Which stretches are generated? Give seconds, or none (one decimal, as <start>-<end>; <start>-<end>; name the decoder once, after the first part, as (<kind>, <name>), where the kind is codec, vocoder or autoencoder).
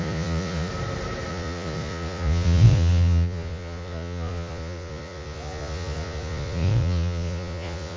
0.0-0.7 (vocoder, Vocos); 1.3-8.0